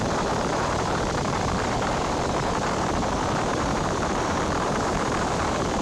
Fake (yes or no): yes